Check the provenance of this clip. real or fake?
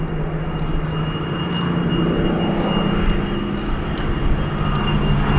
real